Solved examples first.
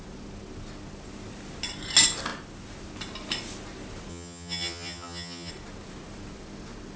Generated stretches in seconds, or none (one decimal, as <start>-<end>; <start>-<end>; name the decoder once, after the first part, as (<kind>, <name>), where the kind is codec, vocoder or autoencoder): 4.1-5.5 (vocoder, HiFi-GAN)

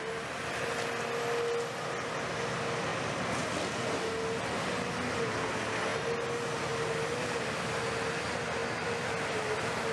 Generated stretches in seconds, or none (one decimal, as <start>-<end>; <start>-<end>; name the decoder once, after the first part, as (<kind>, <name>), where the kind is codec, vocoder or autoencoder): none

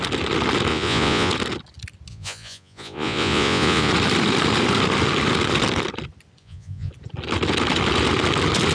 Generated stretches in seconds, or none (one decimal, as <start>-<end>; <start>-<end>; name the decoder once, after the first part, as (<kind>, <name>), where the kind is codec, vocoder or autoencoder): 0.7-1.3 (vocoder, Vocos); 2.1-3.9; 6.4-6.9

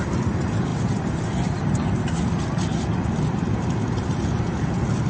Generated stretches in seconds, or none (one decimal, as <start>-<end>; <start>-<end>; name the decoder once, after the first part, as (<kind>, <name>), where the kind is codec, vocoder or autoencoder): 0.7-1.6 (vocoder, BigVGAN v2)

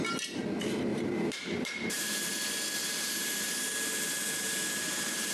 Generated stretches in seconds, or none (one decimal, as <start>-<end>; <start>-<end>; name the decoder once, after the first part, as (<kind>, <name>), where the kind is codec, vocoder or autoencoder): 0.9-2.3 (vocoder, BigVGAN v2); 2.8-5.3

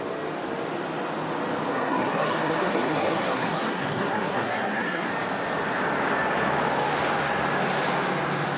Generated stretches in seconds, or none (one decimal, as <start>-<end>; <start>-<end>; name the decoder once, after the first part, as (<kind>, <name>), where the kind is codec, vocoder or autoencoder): 1.7-5.1 (codec, SNAC)

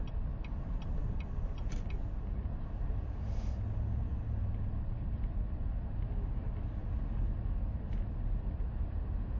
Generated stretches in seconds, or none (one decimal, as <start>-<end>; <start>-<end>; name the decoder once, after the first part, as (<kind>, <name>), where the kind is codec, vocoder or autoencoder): none